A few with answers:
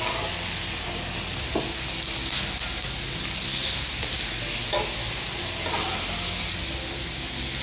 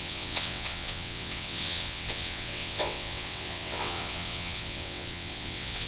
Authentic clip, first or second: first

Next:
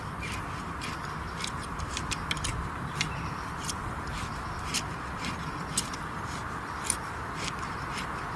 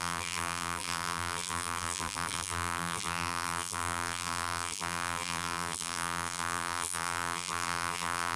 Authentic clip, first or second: first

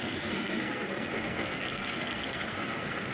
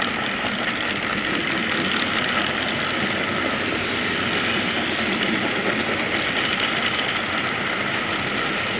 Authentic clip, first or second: second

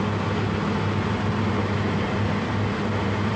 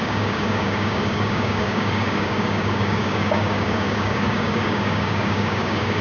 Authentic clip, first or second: first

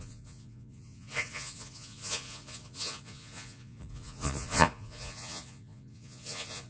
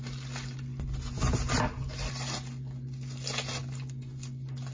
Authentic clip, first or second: second